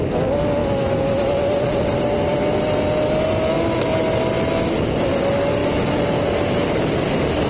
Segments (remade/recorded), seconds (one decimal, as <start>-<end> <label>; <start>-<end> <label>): 0.0-7.5 recorded